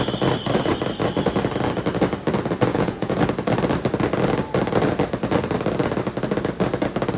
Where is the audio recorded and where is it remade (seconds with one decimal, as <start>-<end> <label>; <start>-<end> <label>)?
0.0-2.7 recorded; 2.7-3.2 remade; 3.2-7.2 recorded